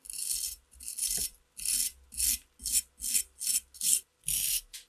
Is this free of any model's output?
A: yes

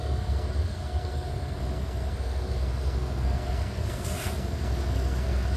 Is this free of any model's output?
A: no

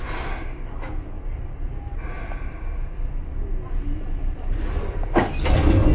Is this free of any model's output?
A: yes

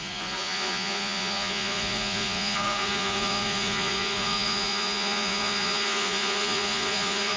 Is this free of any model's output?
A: no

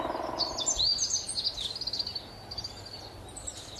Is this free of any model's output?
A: yes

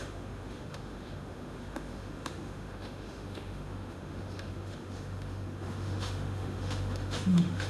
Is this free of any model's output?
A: no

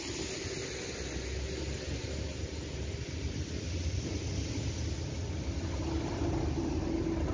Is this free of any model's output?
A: yes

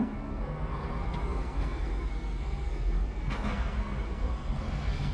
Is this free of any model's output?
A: no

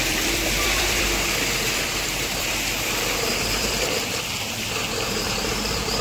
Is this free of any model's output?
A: no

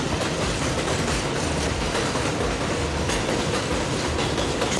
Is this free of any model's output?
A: yes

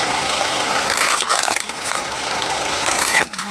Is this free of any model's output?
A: no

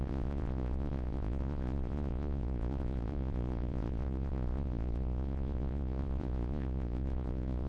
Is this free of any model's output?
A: no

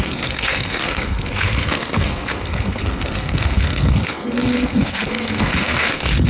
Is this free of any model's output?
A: no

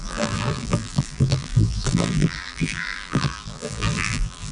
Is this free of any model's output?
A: no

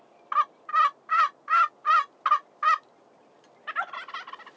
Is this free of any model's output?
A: yes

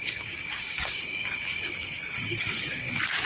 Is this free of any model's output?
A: no